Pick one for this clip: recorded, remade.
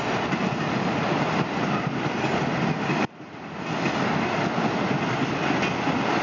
recorded